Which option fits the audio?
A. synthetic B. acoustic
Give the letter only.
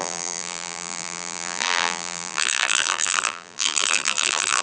A